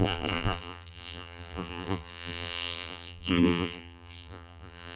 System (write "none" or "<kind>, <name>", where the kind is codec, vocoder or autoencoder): vocoder, BigVGAN v2